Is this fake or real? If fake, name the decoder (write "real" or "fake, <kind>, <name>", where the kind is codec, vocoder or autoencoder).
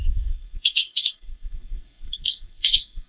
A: fake, codec, SNAC